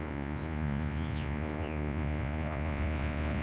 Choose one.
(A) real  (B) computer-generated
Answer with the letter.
B